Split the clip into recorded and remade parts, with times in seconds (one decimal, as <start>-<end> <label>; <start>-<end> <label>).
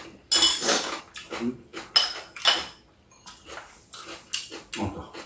0.0-0.5 recorded; 0.5-1.0 remade; 1.0-5.3 recorded